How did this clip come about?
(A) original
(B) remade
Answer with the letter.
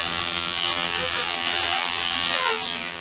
B